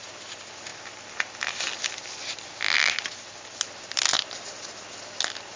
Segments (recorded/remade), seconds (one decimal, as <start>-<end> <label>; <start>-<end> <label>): 0.0-5.6 recorded